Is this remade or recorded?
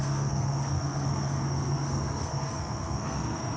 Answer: remade